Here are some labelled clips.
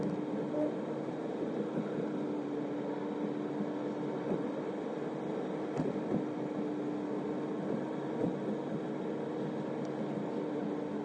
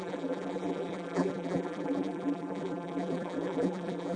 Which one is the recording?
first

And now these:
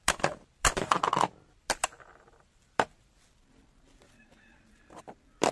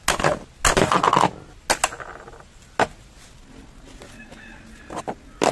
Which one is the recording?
second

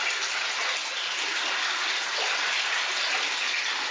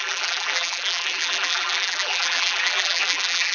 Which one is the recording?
first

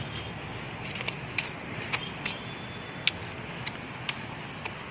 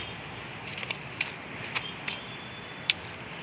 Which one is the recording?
first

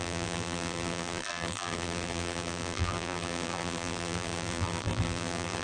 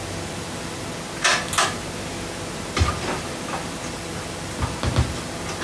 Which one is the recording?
second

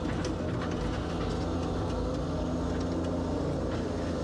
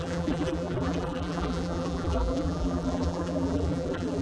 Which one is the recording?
first